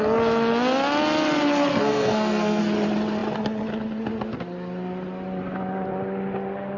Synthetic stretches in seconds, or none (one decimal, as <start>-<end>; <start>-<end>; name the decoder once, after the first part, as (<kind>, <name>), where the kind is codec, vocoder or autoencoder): 1.7-2.6 (codec, SNAC)